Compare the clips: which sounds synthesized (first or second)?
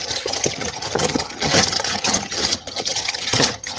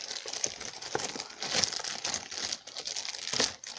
first